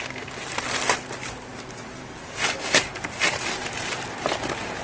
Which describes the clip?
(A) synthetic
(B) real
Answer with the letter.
B